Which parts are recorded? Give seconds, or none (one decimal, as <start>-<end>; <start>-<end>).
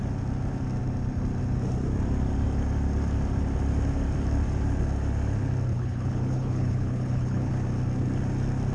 0.0-5.7; 7.5-8.7